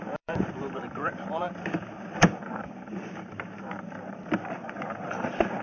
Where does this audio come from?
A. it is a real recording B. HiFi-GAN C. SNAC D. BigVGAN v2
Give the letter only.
D